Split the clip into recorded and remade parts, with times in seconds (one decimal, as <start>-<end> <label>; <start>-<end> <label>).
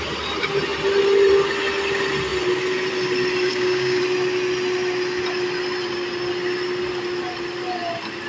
0.0-3.5 recorded; 3.5-4.0 remade; 4.0-8.3 recorded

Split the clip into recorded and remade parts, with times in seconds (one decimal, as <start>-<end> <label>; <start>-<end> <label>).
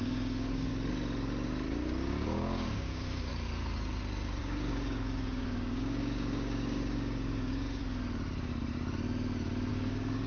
0.0-0.7 remade; 0.7-1.7 recorded; 1.7-3.3 remade; 3.3-4.4 recorded; 4.4-7.8 remade; 7.8-9.7 recorded; 9.7-10.3 remade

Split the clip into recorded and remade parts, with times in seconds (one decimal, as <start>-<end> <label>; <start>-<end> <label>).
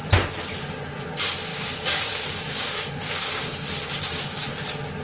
0.0-1.5 recorded; 1.5-4.5 remade; 4.5-5.0 recorded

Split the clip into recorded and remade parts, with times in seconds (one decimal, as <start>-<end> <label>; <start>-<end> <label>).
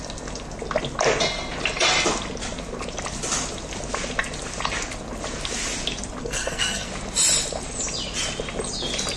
0.0-6.2 recorded; 6.2-6.9 remade; 6.9-9.2 recorded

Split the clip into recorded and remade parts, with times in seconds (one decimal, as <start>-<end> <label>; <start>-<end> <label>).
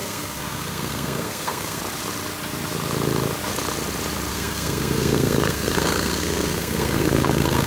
0.0-1.8 remade; 1.8-4.3 recorded; 4.3-7.7 remade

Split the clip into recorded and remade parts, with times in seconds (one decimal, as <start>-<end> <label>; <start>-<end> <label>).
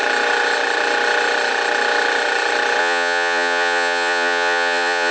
0.0-2.8 recorded; 2.8-5.1 remade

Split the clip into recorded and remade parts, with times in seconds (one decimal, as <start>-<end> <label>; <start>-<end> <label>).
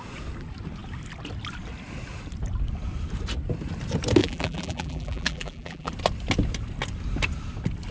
0.0-4.2 recorded; 4.2-5.9 remade; 5.9-7.9 recorded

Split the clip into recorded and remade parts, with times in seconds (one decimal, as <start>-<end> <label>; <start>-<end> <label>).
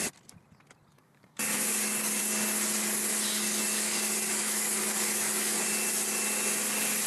0.0-0.9 recorded; 0.9-2.2 remade; 2.2-3.1 recorded; 3.1-5.6 remade; 5.6-7.1 recorded